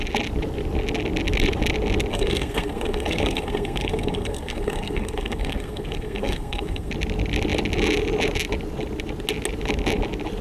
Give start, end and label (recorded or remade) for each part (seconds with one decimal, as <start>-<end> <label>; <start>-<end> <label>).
0.0-2.1 recorded; 2.1-6.9 remade; 6.9-10.4 recorded